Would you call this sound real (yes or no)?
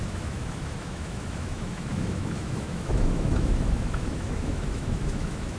no